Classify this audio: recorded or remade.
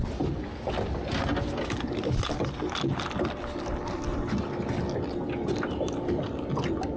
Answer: recorded